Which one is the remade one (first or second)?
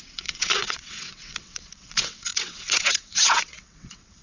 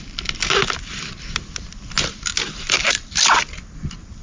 first